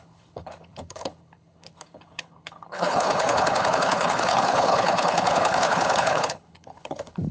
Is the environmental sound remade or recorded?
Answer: remade